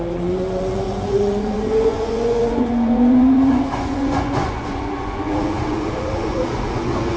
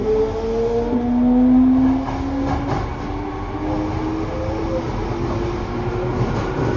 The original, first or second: second